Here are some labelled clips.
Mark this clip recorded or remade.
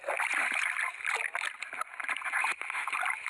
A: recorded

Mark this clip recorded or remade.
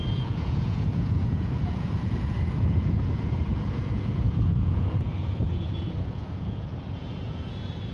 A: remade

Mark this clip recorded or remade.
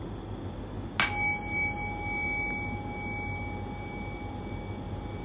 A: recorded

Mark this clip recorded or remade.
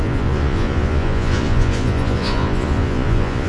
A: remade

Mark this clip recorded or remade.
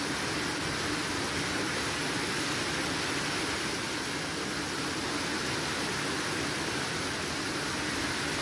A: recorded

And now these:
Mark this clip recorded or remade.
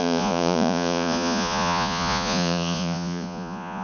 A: remade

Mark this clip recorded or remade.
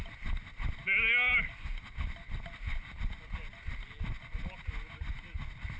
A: recorded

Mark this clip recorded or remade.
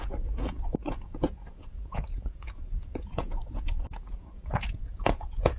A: remade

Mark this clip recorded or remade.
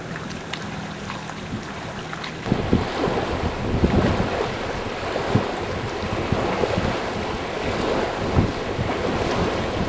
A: recorded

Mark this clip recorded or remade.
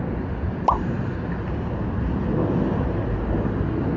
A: recorded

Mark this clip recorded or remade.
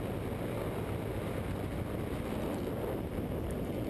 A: recorded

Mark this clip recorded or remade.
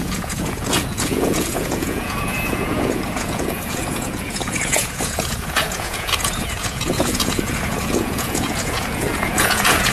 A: remade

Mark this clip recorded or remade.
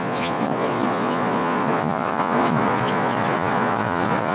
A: remade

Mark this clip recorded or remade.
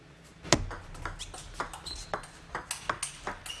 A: recorded